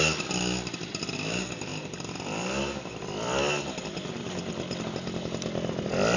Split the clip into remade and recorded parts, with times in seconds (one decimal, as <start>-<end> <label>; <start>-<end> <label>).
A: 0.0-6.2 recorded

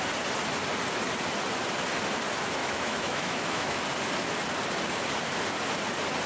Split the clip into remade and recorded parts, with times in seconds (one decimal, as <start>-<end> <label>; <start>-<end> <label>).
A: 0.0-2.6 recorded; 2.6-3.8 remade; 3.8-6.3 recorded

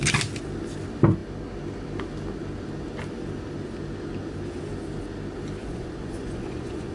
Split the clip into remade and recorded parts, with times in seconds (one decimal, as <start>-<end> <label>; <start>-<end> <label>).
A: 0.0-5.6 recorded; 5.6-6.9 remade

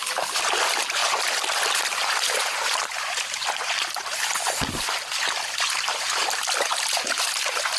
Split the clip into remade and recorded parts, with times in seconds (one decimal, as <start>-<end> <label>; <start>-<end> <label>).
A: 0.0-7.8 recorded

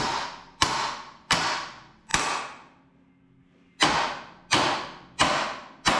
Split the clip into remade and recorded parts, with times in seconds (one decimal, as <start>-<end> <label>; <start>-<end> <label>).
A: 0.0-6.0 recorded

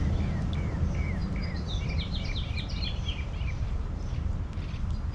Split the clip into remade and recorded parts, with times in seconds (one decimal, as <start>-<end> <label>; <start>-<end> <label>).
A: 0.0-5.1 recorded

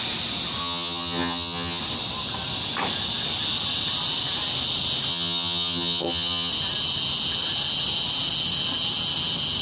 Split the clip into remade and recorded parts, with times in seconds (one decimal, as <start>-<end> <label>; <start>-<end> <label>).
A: 0.0-0.6 recorded; 0.6-1.8 remade; 1.8-5.1 recorded; 5.1-6.5 remade; 6.5-9.6 recorded